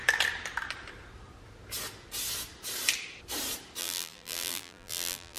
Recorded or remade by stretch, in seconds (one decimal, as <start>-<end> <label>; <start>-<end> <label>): 0.0-3.8 recorded; 3.8-5.4 remade